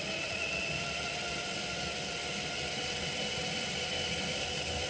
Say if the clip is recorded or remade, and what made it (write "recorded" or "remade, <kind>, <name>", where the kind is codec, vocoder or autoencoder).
recorded